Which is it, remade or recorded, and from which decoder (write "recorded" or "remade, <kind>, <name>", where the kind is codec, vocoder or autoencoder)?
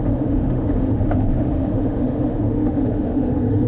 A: remade, autoencoder, DAC-VAE